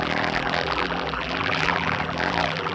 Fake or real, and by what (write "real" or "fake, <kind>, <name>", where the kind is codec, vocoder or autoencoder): fake, vocoder, BigVGAN v2